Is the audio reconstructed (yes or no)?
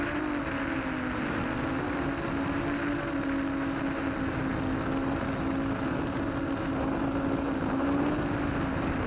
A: no